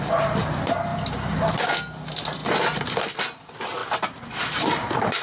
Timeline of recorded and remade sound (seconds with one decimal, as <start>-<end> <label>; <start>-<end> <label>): 0.0-5.2 recorded